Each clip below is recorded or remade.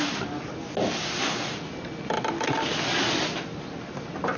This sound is recorded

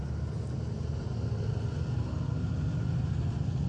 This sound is recorded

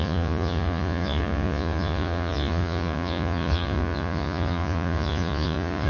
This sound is remade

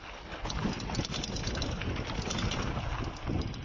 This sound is recorded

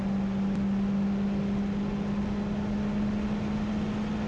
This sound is recorded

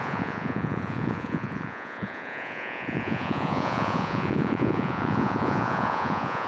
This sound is remade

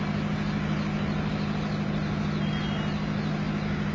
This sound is recorded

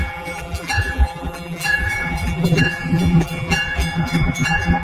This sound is remade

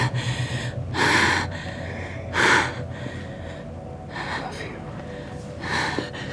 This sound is recorded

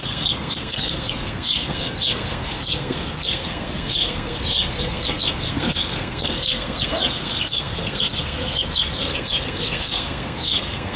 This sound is remade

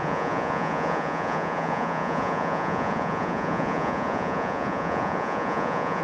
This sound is remade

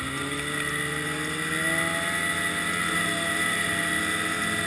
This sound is recorded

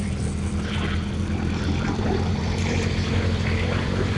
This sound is remade